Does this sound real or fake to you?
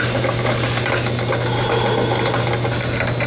real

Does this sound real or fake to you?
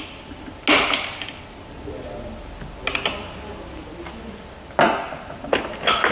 real